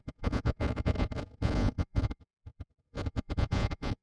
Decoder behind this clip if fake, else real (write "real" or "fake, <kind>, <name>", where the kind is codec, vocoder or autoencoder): fake, vocoder, Vocos